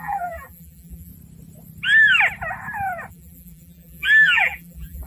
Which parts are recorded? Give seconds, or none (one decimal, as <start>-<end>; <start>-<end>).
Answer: 1.1-3.1